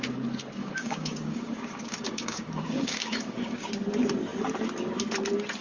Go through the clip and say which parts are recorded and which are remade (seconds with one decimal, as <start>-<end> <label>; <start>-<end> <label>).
0.0-0.6 recorded; 0.6-3.7 remade; 3.7-5.6 recorded